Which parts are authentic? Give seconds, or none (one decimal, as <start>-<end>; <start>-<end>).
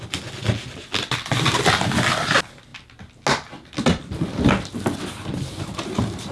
0.0-6.3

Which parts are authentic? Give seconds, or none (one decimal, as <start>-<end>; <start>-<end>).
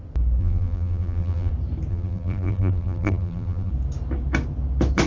0.0-0.4; 1.5-1.9; 3.7-5.1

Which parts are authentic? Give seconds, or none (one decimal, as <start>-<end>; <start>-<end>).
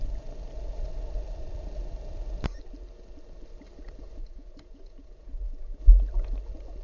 0.0-4.2; 5.8-6.8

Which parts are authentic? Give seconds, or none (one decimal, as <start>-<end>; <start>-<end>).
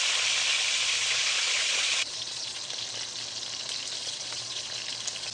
0.0-1.0; 2.6-4.0; 4.7-5.3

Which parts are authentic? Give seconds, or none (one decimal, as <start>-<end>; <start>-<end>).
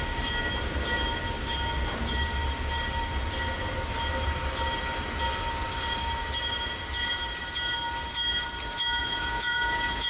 0.0-9.0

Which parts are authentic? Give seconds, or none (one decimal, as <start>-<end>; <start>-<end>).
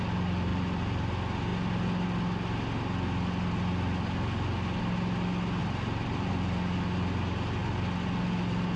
0.0-0.5; 1.1-5.6; 6.3-8.8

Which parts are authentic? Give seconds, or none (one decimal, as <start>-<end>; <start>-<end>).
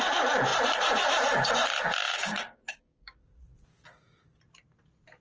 0.0-2.1; 3.2-5.2